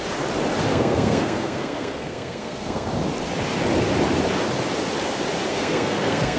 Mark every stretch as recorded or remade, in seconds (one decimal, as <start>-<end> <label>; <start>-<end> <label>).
0.0-0.7 recorded; 0.7-2.9 remade; 2.9-5.5 recorded; 5.5-6.4 remade